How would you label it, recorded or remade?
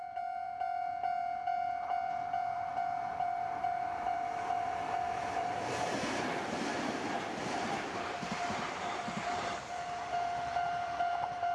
remade